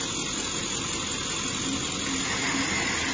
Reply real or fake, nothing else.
real